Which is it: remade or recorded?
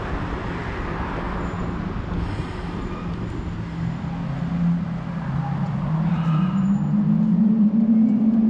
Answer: recorded